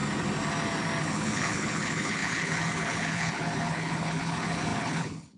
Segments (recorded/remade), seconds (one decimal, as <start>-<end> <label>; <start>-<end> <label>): 0.0-1.0 recorded; 1.0-5.4 remade